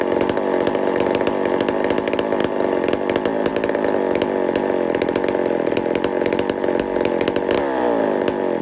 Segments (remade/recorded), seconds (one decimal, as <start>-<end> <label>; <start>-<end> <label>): 0.0-8.6 recorded